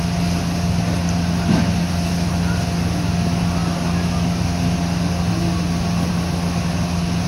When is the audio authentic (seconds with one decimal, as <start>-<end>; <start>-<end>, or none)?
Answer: 0.0-7.3